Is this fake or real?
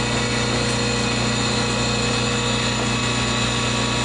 real